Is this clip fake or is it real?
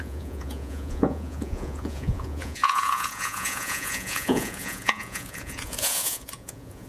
fake